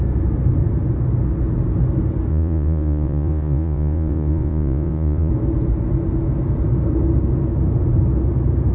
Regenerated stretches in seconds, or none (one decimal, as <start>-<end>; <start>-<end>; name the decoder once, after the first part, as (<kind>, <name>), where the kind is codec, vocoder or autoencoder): 2.3-5.3 (vocoder, Vocos)